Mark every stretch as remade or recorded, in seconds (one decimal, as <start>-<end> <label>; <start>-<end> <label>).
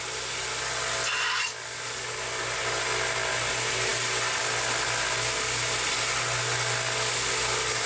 0.0-7.9 recorded